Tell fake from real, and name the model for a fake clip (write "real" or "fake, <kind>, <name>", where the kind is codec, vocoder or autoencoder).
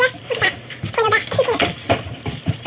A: fake, vocoder, BigVGAN v2